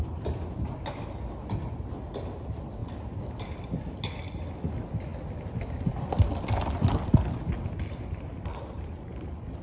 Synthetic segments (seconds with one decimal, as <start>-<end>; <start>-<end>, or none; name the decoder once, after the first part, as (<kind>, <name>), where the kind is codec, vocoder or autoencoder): none